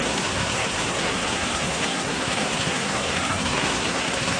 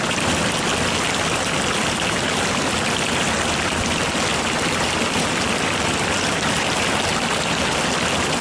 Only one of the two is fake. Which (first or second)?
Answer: first